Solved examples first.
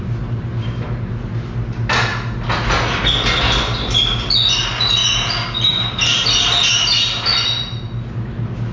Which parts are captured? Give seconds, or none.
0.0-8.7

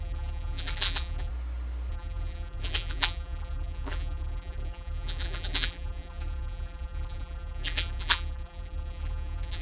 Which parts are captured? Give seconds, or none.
1.3-1.9

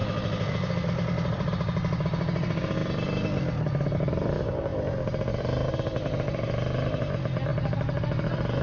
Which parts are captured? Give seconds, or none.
0.0-0.5; 2.8-3.4; 4.7-5.3

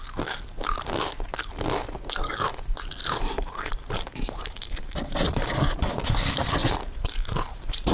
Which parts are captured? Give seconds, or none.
0.0-3.0; 5.5-6.6